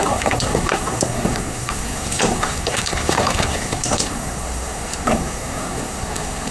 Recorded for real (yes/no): no